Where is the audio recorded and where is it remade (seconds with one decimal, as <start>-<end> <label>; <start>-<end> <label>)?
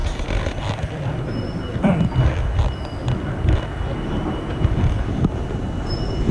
0.0-1.9 remade; 1.9-6.3 recorded